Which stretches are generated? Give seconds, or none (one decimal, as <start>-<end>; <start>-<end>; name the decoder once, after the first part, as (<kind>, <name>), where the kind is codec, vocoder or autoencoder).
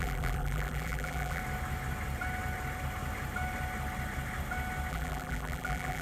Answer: 0.0-1.4 (vocoder, BigVGAN v2); 4.9-6.0